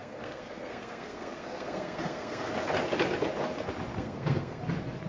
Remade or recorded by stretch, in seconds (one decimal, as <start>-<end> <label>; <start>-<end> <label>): 0.0-2.5 remade; 2.5-3.9 recorded; 3.9-4.6 remade; 4.6-5.1 recorded